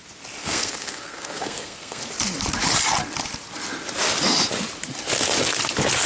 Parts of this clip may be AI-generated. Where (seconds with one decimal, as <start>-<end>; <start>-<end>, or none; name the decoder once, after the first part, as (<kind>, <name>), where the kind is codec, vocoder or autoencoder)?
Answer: 0.4-2.0 (codec, SNAC)